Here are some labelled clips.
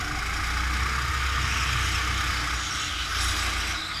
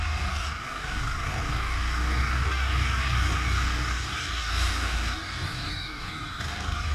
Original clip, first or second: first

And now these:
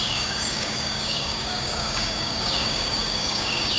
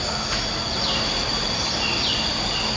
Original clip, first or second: second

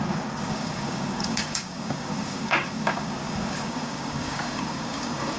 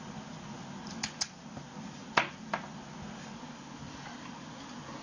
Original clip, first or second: second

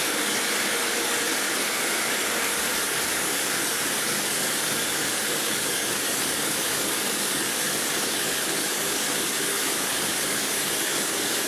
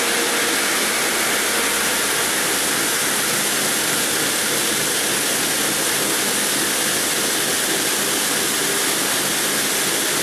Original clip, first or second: second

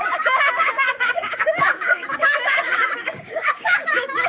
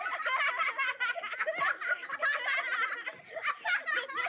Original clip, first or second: second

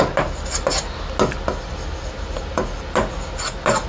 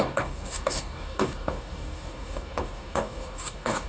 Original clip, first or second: first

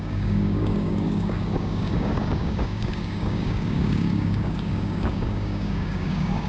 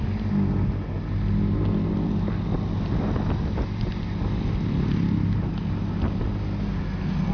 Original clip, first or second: second